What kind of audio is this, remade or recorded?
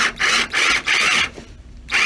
recorded